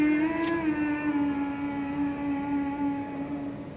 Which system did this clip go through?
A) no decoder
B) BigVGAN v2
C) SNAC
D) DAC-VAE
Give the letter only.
A